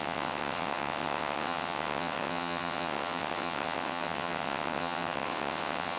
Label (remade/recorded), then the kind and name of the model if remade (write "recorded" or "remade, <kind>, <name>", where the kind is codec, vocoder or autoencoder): remade, vocoder, WaveNeXt